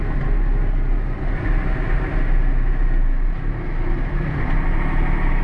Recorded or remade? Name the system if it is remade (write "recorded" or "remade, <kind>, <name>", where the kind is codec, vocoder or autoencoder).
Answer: recorded